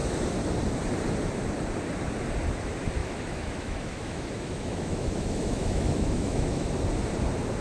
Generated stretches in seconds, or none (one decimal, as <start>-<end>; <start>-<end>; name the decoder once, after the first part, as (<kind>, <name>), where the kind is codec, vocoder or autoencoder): 3.0-6.7 (autoencoder, DAC-VAE)